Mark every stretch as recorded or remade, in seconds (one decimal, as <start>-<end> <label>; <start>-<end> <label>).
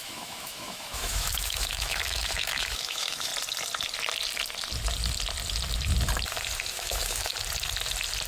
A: 0.0-3.3 remade; 3.3-6.7 recorded; 6.7-7.3 remade; 7.3-8.3 recorded